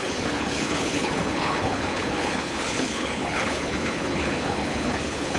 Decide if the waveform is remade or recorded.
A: remade